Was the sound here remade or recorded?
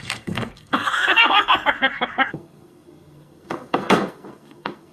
remade